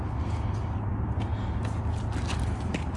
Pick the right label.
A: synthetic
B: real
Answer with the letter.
B